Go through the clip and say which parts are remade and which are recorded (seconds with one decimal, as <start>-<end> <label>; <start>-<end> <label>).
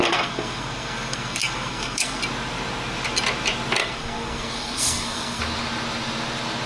0.0-2.2 remade; 2.2-3.8 recorded; 3.8-5.4 remade; 5.4-6.7 recorded